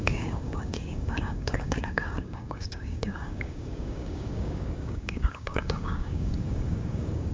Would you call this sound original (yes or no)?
no